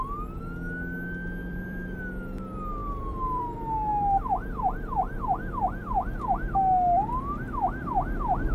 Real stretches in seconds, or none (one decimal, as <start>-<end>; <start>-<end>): 0.0-1.4; 2.0-2.8; 3.4-8.5